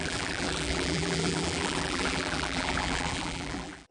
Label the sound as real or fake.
fake